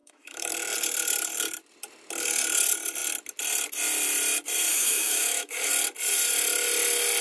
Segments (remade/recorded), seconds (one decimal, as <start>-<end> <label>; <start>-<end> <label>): 0.0-0.5 remade; 0.5-4.7 recorded; 4.7-5.7 remade; 5.7-7.2 recorded